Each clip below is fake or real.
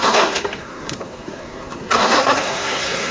fake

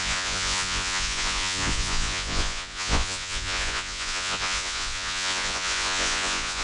fake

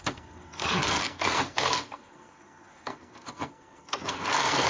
fake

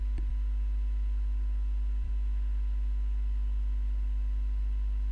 fake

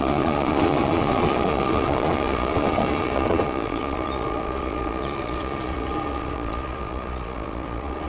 fake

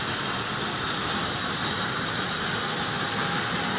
real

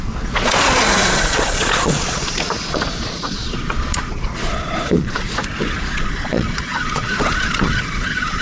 fake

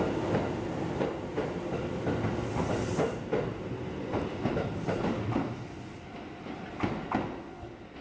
real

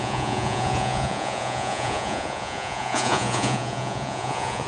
fake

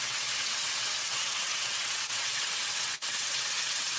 fake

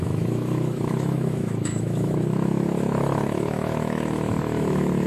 fake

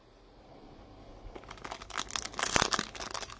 real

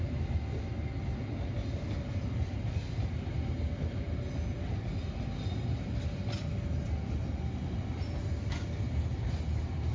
real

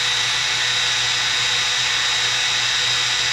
real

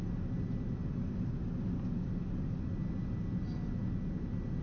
real